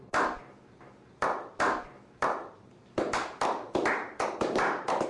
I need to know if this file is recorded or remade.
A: remade